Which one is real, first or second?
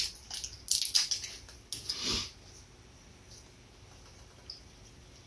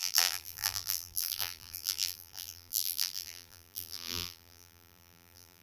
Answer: first